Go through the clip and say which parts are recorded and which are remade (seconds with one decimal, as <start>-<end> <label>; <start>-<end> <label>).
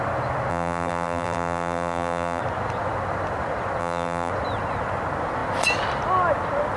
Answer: 0.0-0.5 recorded; 0.5-2.4 remade; 2.4-3.8 recorded; 3.8-4.3 remade; 4.3-6.8 recorded